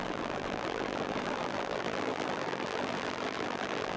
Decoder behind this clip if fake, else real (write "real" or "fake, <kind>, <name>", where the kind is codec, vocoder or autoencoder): fake, vocoder, BigVGAN v2